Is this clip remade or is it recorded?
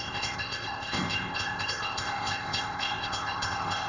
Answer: remade